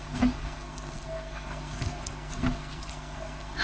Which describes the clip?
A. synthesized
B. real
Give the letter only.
A